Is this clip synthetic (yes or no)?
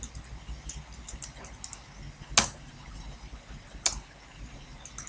no